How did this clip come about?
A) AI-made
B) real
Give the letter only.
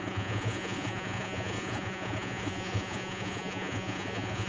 A